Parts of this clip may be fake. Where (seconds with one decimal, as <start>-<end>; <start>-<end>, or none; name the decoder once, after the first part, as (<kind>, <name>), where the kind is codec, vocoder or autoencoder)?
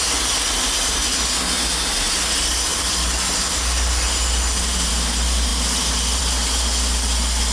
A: none